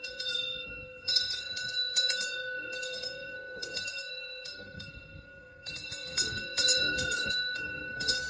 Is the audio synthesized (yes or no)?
yes